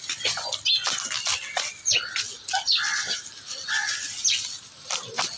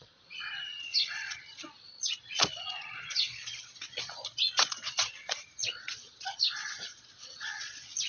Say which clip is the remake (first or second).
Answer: second